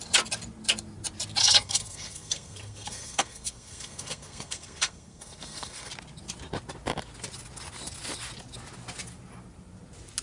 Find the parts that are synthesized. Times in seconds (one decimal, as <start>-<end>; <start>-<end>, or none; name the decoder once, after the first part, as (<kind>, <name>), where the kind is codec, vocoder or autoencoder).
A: 1.4-5.9 (codec, SNAC)